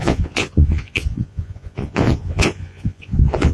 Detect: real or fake fake